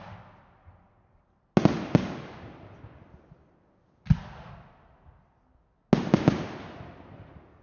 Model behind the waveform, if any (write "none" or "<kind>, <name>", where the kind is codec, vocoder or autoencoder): none